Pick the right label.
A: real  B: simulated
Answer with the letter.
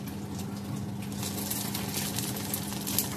A